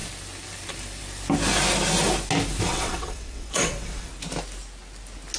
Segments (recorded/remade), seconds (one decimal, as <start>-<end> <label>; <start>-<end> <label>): 0.0-2.7 recorded; 2.7-4.1 remade; 4.1-5.4 recorded